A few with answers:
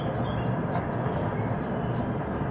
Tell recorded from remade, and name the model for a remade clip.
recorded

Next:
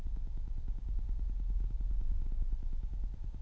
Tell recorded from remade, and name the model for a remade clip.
recorded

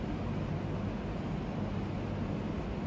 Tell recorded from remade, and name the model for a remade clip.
recorded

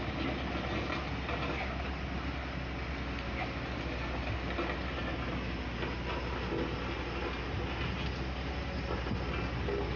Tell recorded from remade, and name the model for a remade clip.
recorded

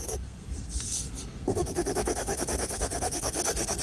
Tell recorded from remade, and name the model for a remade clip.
remade, codec, SNAC